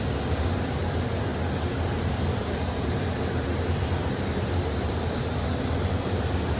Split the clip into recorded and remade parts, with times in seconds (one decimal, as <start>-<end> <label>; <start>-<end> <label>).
0.0-6.6 recorded